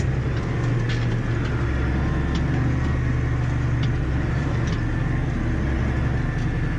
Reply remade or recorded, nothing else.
recorded